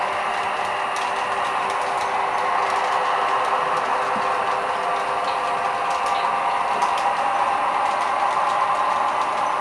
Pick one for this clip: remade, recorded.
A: recorded